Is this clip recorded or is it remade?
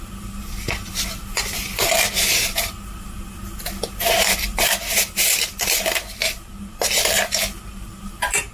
recorded